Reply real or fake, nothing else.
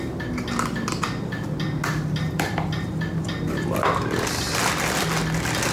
real